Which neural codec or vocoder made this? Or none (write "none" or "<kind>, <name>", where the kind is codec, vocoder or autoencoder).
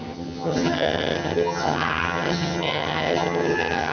vocoder, HiFi-GAN